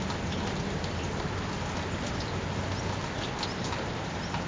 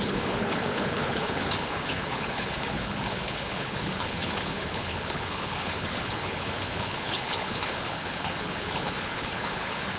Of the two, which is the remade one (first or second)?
second